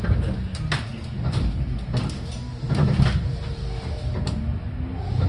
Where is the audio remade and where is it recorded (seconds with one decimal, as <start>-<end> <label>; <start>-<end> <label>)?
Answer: 0.0-5.3 recorded